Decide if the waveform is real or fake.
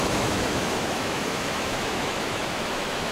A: fake